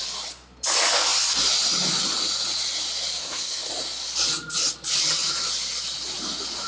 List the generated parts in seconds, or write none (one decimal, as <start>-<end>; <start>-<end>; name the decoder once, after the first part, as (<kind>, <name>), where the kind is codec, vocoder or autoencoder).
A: 3.2-3.7 (codec, SNAC)